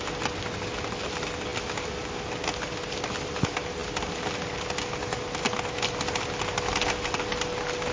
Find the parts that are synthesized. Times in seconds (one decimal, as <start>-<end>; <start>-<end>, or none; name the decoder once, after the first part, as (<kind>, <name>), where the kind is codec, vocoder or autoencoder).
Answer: none